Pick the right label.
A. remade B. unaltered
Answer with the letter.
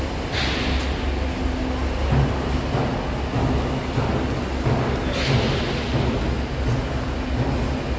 B